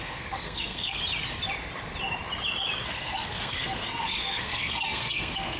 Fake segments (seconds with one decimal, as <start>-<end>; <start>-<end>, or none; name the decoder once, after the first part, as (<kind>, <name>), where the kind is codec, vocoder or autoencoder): 0.0-1.0 (codec, SNAC); 2.8-5.6